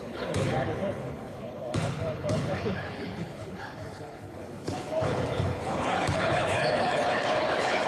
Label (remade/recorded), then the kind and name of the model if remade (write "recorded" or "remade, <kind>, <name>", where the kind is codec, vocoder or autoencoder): remade, codec, HILCodec